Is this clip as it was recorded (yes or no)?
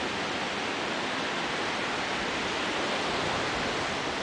yes